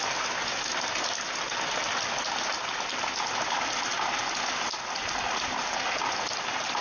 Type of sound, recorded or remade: recorded